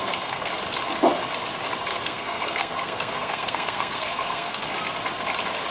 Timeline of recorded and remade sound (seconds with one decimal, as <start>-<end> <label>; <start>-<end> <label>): 0.0-0.5 remade; 0.5-1.9 recorded; 1.9-4.7 remade; 4.7-5.7 recorded

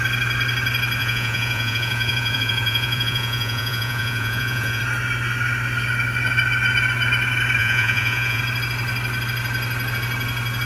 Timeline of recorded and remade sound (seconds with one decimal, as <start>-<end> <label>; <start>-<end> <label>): 0.0-1.0 recorded; 1.0-4.8 remade; 4.8-7.6 recorded; 7.6-8.4 remade; 8.4-10.7 recorded

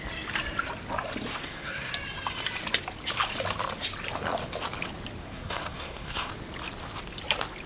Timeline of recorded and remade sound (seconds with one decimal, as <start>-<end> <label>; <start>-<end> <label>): 0.0-1.3 recorded; 1.3-1.9 remade; 1.9-5.2 recorded; 5.2-6.3 remade; 6.3-7.7 recorded

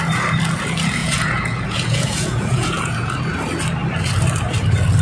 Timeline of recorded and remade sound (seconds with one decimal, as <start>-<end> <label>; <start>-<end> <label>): 0.0-1.0 recorded; 1.0-3.1 remade; 3.1-5.0 recorded

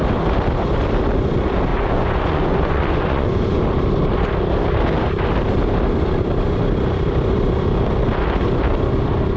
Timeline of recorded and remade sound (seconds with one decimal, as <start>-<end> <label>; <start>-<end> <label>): 0.0-1.7 recorded; 1.7-3.6 remade; 3.6-9.4 recorded

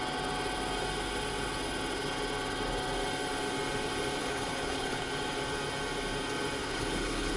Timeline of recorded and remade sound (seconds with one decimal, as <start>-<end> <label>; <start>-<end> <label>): 0.0-4.2 recorded; 4.2-5.1 remade; 5.1-6.6 recorded; 6.6-7.4 remade

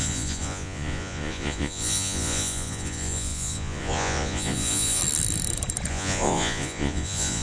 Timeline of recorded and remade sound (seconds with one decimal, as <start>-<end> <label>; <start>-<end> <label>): 0.0-5.0 remade; 5.0-5.9 recorded; 5.9-7.4 remade